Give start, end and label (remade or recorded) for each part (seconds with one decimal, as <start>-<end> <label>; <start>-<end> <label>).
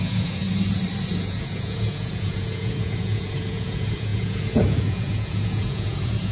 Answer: 0.0-0.4 remade; 0.4-1.2 recorded; 1.2-6.3 remade